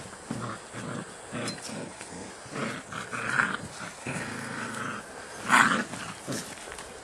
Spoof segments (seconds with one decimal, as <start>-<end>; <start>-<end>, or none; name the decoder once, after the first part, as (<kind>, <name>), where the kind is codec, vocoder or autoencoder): 1.7-2.3 (codec, SNAC); 4.0-4.8